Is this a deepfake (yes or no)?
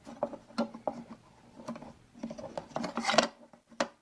no